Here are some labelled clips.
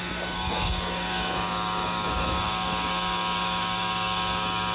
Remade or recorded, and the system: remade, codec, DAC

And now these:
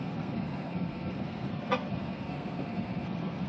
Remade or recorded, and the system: remade, codec, SNAC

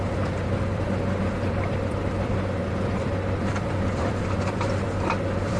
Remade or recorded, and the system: remade, vocoder, BigVGAN v2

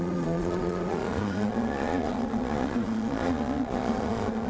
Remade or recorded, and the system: remade, vocoder, Vocos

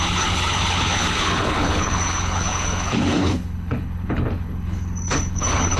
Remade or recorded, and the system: remade, codec, HILCodec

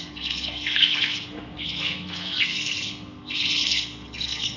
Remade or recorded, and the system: remade, codec, SNAC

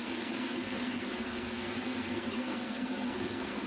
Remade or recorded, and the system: remade, codec, SNAC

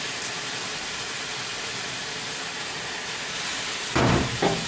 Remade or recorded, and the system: recorded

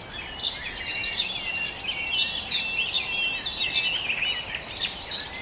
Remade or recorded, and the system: recorded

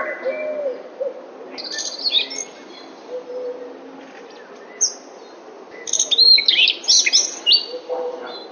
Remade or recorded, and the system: recorded